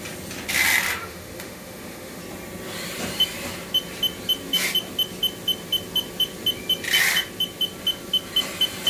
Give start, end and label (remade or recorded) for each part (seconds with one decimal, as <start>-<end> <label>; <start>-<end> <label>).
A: 0.0-1.0 recorded; 1.0-2.2 remade; 2.2-8.9 recorded